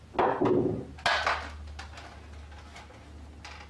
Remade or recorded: recorded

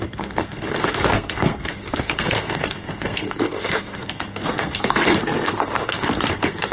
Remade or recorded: remade